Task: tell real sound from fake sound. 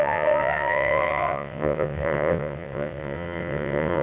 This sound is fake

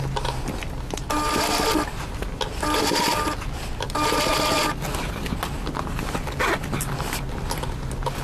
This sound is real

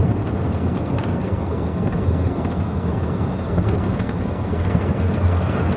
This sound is fake